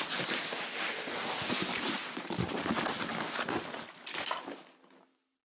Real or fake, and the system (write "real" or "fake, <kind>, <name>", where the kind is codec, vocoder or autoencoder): real